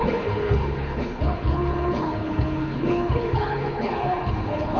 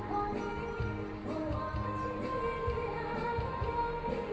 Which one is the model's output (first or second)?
first